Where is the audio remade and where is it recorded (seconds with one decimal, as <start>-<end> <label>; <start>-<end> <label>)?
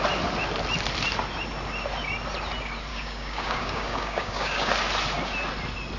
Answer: 0.0-2.9 recorded; 2.9-4.7 remade; 4.7-6.0 recorded